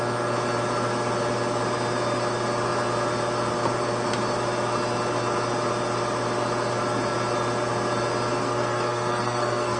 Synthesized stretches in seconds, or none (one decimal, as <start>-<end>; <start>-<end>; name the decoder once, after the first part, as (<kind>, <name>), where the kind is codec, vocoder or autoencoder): 8.4-9.8 (codec, SNAC)